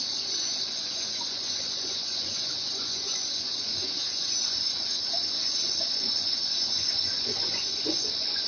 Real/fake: fake